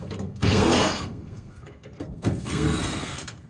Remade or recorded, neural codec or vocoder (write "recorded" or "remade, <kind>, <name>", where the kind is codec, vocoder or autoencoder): remade, codec, SNAC